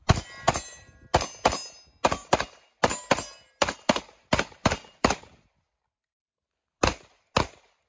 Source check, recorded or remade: recorded